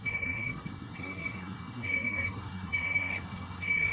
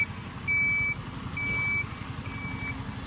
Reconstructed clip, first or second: first